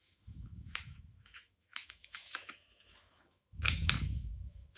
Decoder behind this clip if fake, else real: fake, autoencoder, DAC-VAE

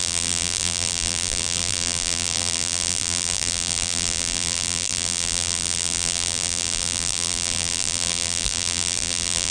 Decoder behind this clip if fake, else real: fake, vocoder, BigVGAN v2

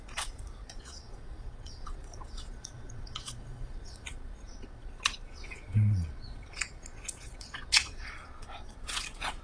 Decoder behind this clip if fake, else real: fake, vocoder, Vocos